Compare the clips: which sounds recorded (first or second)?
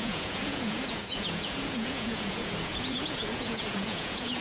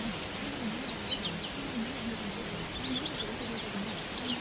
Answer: second